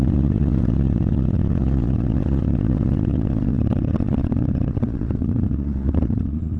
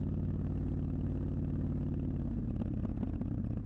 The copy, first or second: first